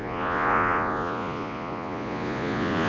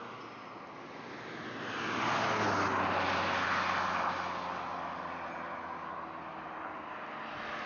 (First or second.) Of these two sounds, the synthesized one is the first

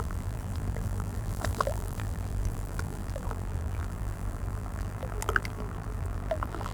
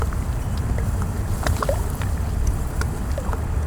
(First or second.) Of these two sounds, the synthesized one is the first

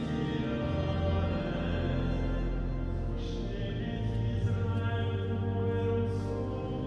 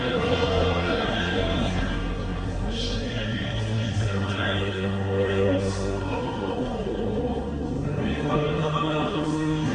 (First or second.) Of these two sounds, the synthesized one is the second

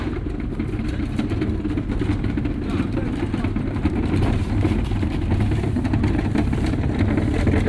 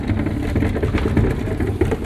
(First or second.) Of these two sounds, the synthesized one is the first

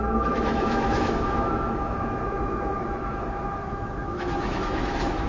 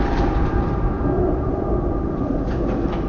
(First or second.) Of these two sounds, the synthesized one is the first